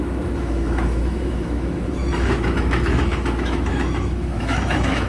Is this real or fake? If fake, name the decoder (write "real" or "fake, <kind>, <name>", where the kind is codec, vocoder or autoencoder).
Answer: fake, autoencoder, DAC-VAE